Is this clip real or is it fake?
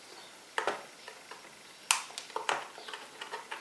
real